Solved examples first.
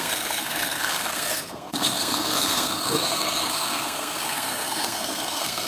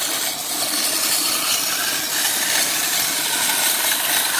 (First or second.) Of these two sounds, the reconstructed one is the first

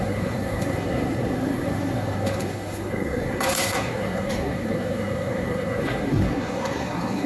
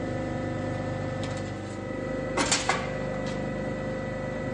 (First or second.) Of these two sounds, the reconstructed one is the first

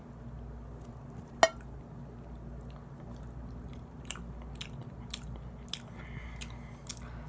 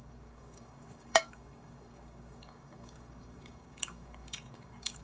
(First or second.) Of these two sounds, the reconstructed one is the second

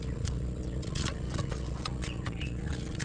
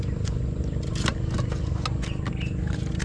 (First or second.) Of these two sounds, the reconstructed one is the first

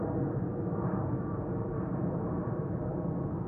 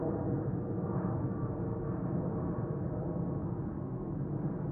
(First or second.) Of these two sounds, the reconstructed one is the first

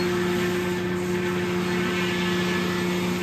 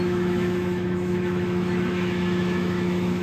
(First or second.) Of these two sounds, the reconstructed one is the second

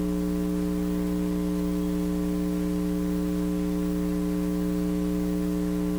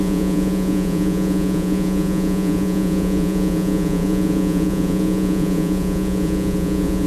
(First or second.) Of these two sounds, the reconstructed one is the second